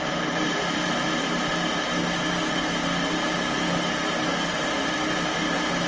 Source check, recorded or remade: recorded